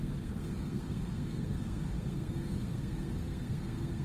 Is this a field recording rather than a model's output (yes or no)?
no